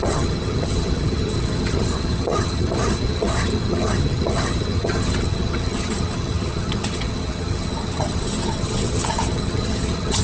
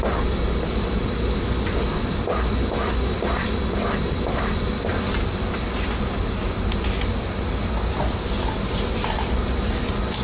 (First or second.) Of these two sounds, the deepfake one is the first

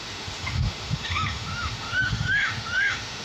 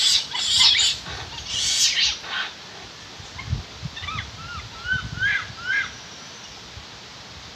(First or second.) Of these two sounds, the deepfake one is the first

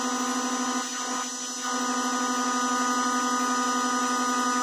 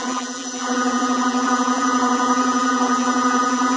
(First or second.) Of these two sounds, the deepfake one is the second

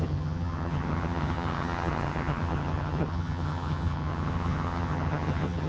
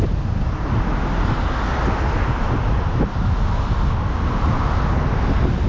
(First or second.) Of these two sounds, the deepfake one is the first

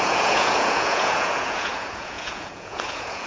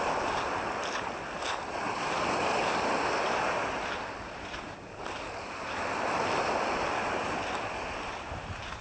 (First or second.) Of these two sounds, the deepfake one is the first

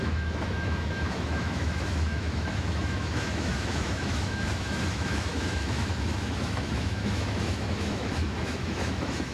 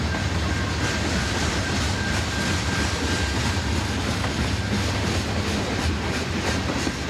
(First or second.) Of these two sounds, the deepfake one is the first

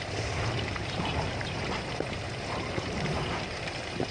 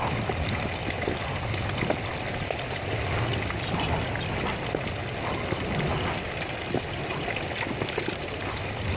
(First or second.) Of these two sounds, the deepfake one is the first